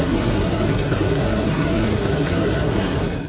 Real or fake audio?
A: fake